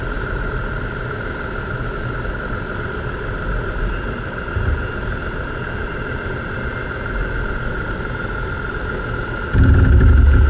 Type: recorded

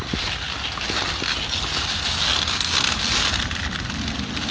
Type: recorded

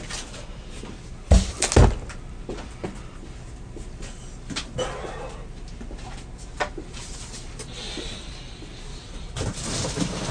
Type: recorded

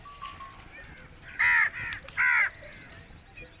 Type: recorded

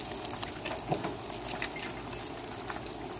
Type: recorded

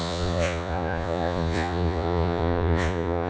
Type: remade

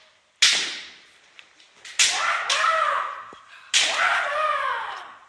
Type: recorded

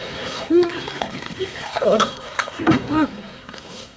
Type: remade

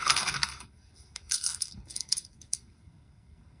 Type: remade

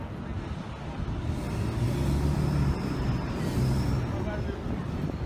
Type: recorded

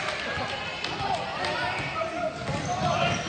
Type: recorded